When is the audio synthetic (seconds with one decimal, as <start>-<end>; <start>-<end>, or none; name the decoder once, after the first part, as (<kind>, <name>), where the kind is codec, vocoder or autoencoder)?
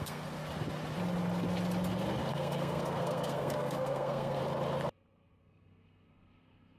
0.0-0.4 (codec, SNAC); 2.3-4.4; 5.4-6.8